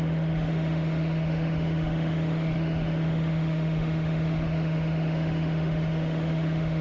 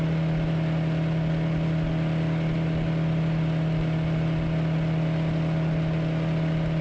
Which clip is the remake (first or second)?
first